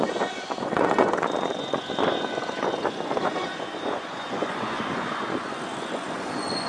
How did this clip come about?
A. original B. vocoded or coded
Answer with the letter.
B